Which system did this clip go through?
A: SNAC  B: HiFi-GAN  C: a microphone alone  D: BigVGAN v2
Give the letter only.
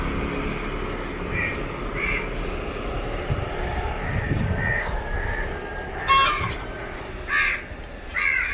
C